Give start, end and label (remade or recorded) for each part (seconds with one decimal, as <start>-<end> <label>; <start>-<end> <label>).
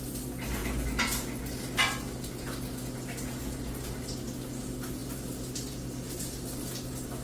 0.0-7.2 recorded